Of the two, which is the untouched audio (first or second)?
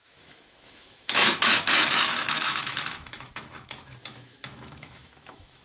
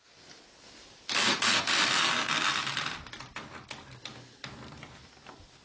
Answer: second